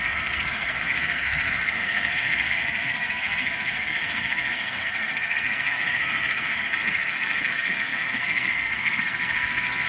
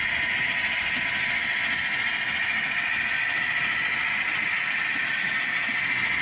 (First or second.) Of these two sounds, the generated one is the first